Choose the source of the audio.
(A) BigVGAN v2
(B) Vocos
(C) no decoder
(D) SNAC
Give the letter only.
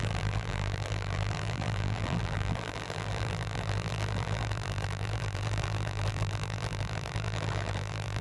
A